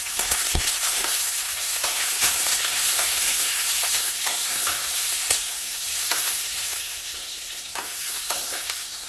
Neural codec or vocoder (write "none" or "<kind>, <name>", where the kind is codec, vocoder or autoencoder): codec, SNAC